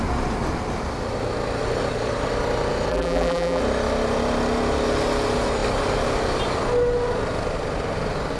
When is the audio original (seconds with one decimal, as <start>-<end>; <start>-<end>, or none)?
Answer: 0.0-2.9; 3.6-8.4